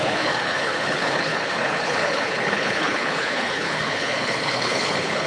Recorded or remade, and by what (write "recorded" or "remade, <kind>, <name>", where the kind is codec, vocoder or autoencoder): remade, codec, HILCodec